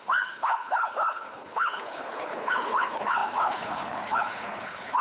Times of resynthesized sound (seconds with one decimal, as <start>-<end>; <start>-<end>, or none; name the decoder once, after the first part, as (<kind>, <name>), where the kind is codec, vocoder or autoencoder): 0.0-5.0 (codec, HILCodec)